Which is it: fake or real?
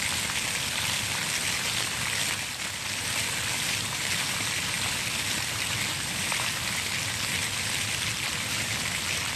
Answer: real